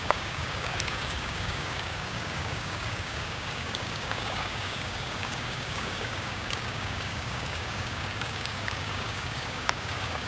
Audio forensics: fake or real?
fake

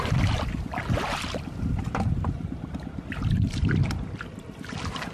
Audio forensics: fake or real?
real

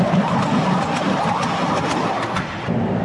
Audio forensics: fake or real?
real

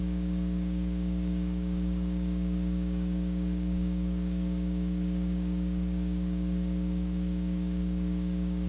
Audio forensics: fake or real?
fake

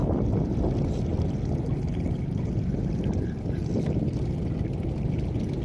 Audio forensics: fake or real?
real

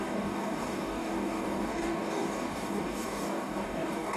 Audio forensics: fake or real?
fake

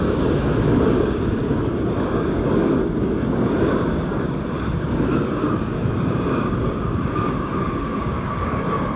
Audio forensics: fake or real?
fake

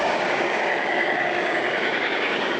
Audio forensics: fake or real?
fake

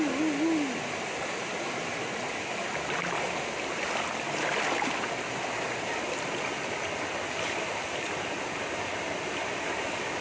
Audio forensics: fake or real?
real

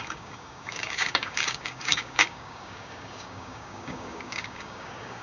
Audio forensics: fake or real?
fake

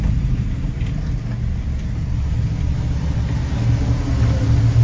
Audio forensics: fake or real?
real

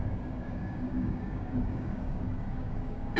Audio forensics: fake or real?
fake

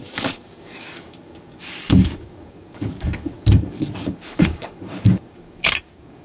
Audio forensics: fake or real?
fake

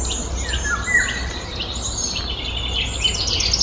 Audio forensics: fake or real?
real